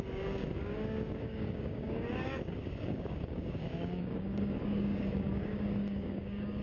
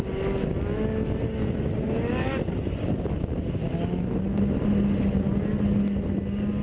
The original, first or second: second